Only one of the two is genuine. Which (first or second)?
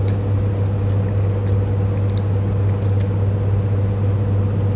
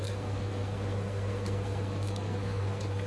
first